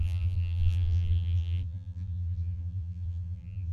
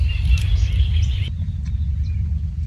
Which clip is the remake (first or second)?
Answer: first